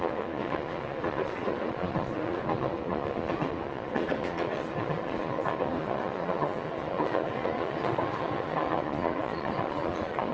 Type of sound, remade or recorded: remade